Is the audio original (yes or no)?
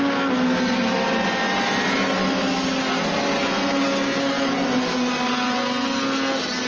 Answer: yes